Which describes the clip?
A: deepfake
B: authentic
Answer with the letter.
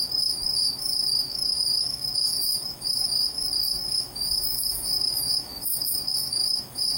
A